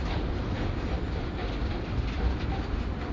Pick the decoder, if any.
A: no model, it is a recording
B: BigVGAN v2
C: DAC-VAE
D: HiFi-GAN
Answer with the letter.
A